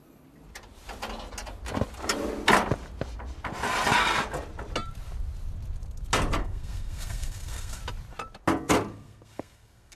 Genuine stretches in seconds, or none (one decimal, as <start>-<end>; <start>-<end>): 0.0-6.4; 7.8-8.9